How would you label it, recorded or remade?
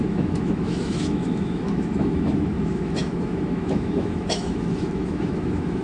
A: remade